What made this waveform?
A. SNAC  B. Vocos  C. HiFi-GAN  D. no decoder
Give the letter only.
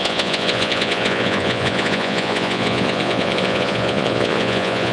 B